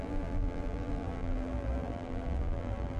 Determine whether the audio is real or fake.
fake